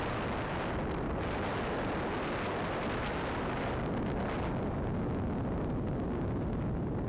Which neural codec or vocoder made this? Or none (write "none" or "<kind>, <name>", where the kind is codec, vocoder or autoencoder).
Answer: none